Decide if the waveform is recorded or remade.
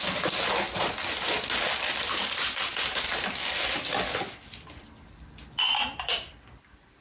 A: recorded